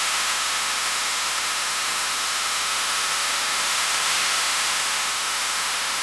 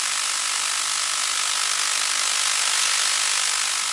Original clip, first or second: second